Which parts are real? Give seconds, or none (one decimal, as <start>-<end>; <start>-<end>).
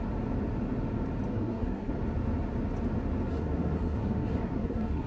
0.0-1.3; 1.9-3.3